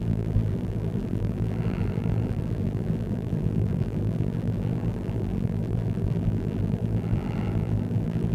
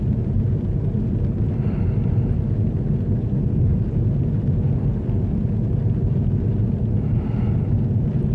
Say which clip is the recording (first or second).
second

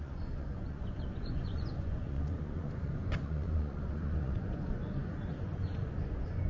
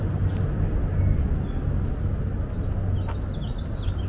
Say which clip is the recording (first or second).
second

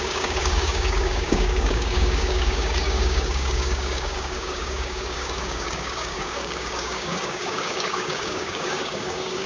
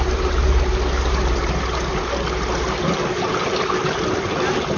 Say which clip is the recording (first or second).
second